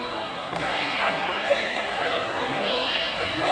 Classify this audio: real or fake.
fake